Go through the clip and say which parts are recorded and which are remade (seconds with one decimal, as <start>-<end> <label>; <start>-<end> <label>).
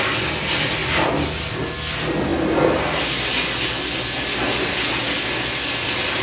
0.0-6.2 recorded